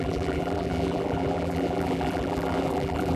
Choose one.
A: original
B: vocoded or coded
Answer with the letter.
B